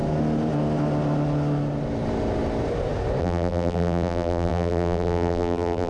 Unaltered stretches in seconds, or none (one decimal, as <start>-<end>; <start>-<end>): 0.0-3.2